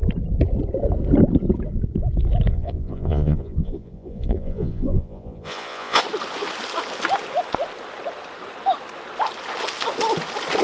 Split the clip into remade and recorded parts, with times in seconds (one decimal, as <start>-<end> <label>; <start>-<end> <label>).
0.0-2.5 recorded; 2.5-6.0 remade; 6.0-10.6 recorded